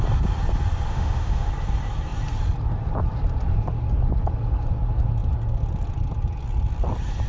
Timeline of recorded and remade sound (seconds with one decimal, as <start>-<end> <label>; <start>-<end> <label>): 0.0-0.9 recorded; 0.9-1.5 remade; 1.5-7.3 recorded